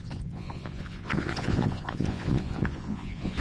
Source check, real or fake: fake